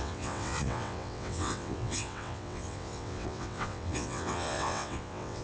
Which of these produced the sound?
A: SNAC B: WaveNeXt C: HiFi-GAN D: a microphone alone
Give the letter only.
B